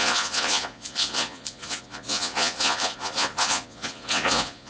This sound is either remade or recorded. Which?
remade